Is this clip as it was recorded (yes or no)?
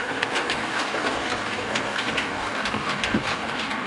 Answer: no